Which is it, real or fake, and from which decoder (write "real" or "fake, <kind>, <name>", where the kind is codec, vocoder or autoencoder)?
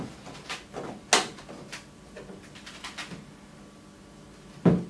real